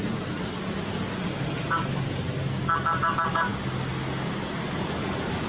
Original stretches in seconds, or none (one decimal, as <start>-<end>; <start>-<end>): 0.0-5.5